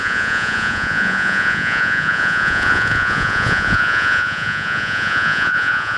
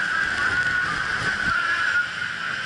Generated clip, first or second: first